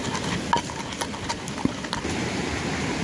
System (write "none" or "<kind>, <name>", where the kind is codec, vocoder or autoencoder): none